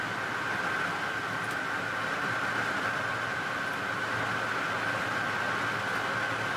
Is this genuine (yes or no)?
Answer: yes